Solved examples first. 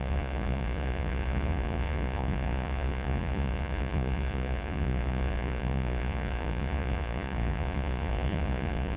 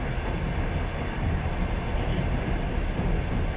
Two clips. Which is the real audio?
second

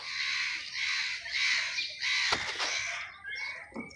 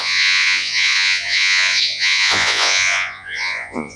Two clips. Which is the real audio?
first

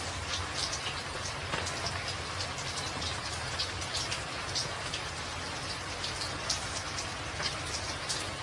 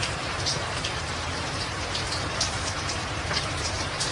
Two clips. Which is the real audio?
first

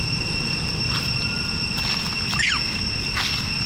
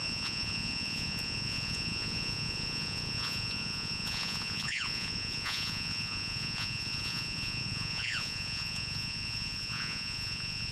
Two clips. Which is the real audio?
first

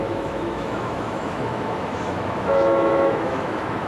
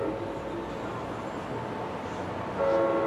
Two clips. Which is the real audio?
second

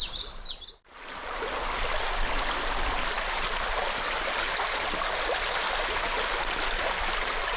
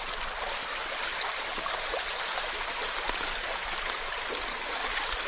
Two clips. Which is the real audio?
first